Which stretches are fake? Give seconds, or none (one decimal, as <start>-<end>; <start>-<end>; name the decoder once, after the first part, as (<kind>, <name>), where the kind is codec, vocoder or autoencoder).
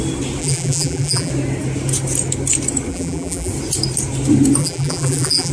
0.4-1.3 (vocoder, BigVGAN v2); 2.9-3.5; 4.6-5.5